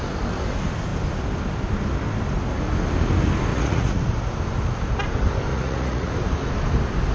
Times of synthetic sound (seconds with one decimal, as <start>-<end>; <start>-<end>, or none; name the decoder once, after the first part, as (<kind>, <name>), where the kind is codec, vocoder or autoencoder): 3.5-4.0 (vocoder, Vocos); 5.5-6.1